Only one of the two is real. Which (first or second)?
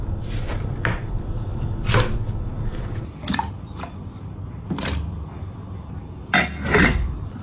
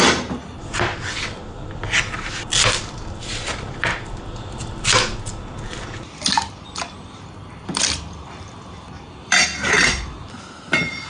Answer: first